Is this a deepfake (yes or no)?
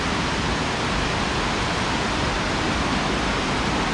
no